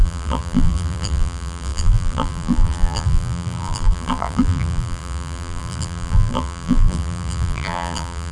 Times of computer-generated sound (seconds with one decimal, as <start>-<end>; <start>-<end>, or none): 0.0-8.3